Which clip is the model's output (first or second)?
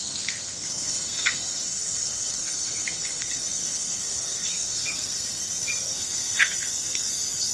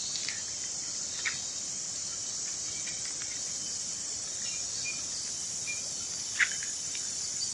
first